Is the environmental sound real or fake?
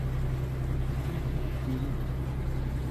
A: real